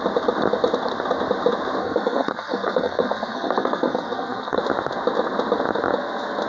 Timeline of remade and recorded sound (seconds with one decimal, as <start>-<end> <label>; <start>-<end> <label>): 0.0-1.8 recorded; 1.8-4.6 remade; 4.6-6.5 recorded